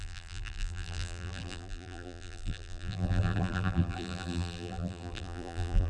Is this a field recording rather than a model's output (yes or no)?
no